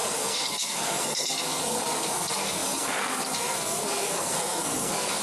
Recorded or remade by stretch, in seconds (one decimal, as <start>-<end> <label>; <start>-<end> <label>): 0.0-5.2 remade